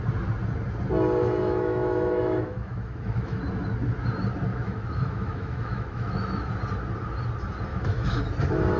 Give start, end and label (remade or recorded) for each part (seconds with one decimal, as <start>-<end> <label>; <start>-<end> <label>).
0.0-1.4 recorded; 1.4-3.4 remade; 3.4-4.5 recorded; 4.5-6.5 remade; 6.5-7.7 recorded; 7.7-8.2 remade; 8.2-8.8 recorded